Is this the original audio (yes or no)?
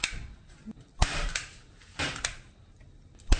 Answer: yes